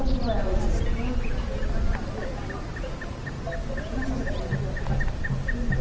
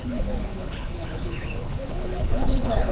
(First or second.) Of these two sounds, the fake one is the second